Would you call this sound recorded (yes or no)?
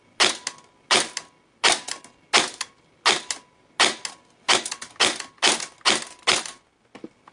yes